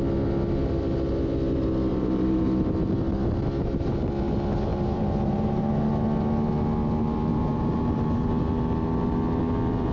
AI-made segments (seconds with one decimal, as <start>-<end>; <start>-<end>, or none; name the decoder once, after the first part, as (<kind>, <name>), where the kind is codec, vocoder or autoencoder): 1.9-2.9 (vocoder, BigVGAN v2); 4.7-5.7; 7.3-8.3